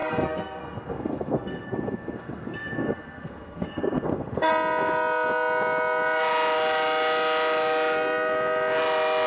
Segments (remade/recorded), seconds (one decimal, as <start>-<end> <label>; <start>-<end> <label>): 0.0-4.5 remade; 4.5-9.3 recorded